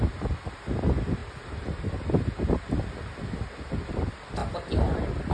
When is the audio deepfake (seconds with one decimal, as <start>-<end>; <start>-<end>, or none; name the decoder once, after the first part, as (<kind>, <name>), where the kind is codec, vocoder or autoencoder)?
none

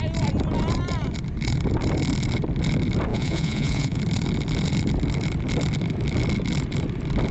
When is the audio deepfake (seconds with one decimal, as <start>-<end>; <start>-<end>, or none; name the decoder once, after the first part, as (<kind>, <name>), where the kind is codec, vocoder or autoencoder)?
3.1-4.0 (vocoder, Vocos)

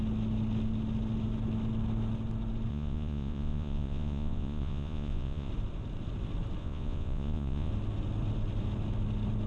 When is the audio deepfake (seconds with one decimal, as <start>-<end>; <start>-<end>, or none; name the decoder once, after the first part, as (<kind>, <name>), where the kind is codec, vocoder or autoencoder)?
2.7-5.5 (vocoder, Vocos); 6.6-7.7

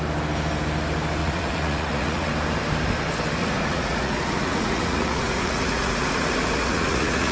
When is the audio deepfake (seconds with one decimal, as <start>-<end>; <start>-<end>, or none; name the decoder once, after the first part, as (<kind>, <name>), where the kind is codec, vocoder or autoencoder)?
1.2-2.3 (vocoder, Vocos); 3.4-7.3

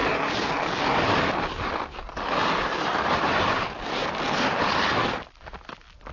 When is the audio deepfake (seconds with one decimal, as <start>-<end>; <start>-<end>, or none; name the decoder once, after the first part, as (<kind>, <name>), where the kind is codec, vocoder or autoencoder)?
none

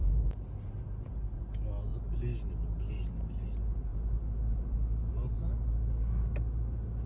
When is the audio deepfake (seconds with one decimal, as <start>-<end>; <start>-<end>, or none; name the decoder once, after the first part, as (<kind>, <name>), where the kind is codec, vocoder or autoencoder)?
none